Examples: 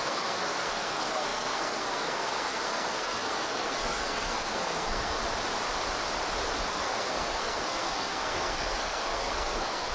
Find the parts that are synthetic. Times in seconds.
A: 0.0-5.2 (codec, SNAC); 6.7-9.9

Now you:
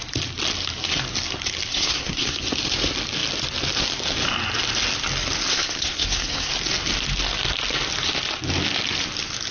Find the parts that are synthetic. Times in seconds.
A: 1.7-2.4 (codec, SNAC); 5.5-6.5

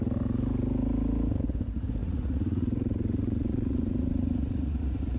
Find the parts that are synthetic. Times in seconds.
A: 2.0-5.2 (vocoder, Vocos)